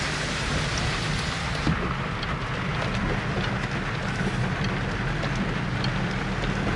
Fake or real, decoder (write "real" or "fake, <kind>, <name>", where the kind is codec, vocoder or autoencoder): real